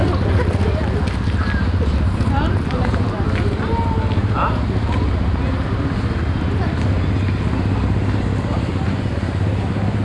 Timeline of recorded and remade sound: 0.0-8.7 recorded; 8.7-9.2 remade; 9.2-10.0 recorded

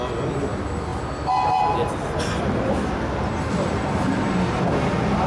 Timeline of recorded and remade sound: 0.0-5.3 recorded

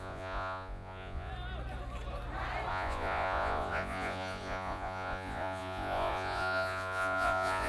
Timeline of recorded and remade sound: 0.0-1.3 remade; 1.3-2.7 recorded; 2.7-7.7 remade

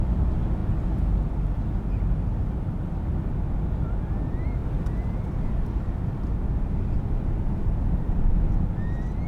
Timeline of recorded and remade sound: 0.0-9.3 recorded

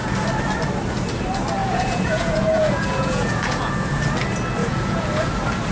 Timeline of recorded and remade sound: 0.0-1.6 recorded; 1.6-3.7 remade; 3.7-4.6 recorded; 4.6-5.1 remade; 5.1-5.7 recorded

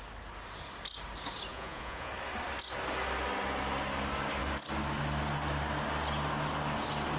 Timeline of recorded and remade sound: 0.0-1.5 recorded; 1.5-2.1 remade; 2.1-7.2 recorded

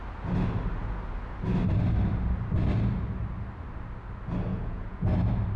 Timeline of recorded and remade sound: 0.0-4.5 recorded; 4.5-5.1 remade; 5.1-5.6 recorded